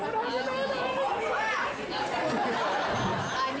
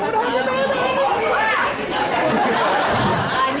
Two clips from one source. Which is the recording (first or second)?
first